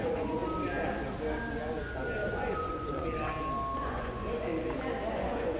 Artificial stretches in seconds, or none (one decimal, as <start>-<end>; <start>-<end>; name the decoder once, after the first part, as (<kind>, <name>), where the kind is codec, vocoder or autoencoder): 0.0-0.4 (vocoder, Vocos); 1.5-3.1; 3.8-4.5; 5.1-5.6